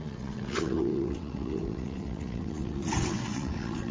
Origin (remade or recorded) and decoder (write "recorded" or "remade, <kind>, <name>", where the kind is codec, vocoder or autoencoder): remade, vocoder, WaveNeXt